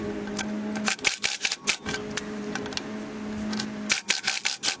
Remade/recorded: recorded